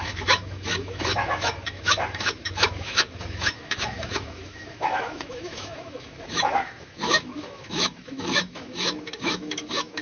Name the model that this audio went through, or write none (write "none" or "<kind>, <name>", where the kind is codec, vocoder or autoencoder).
autoencoder, DAC-VAE